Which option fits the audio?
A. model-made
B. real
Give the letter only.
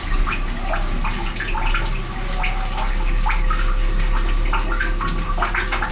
B